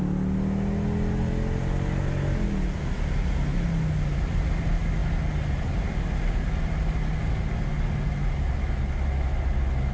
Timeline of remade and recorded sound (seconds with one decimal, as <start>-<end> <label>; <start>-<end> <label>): 0.0-9.9 recorded